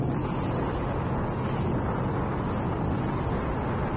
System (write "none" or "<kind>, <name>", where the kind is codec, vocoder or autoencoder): none